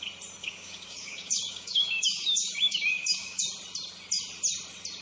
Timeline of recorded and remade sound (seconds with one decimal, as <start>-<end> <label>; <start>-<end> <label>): 0.0-0.4 recorded; 0.4-3.4 remade; 3.4-5.0 recorded